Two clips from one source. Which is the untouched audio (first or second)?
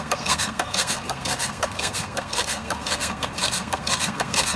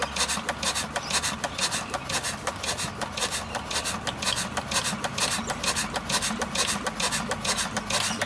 second